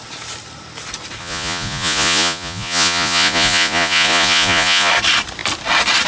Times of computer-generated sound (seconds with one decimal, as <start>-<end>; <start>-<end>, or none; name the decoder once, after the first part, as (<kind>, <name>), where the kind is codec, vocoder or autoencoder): 1.2-4.9 (vocoder, Vocos)